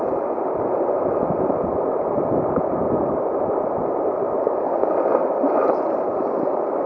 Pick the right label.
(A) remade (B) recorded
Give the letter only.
B